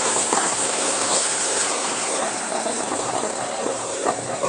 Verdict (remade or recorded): remade